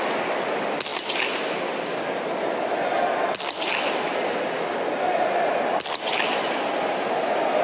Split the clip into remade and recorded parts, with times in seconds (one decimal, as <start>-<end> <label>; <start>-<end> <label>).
0.0-7.6 recorded